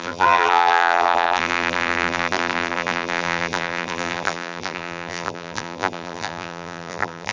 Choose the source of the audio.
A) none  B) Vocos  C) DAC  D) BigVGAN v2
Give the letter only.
D